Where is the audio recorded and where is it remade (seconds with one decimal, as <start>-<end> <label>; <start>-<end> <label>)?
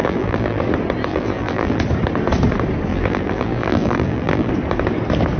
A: 0.0-0.6 remade; 0.6-1.1 recorded; 1.1-1.8 remade; 1.8-2.9 recorded; 2.9-4.5 remade; 4.5-5.4 recorded